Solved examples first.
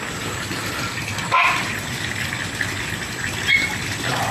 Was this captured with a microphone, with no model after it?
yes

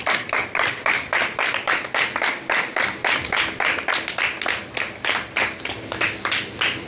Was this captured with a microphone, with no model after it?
yes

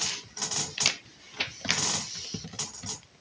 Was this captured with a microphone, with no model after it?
yes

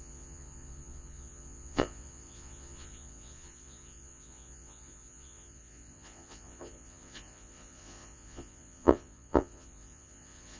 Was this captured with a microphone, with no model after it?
no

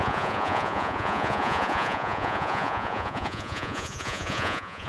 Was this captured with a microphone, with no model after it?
no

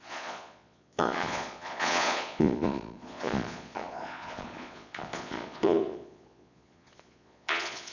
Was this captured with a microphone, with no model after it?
no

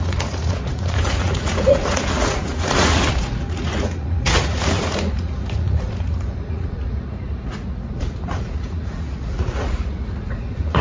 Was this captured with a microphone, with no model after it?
no